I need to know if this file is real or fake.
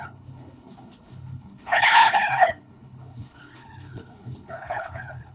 fake